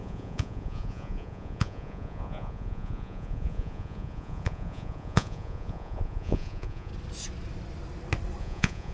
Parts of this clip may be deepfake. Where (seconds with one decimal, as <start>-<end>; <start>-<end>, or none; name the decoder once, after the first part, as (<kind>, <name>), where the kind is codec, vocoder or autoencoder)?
0.0-6.9 (vocoder, Vocos); 8.4-8.9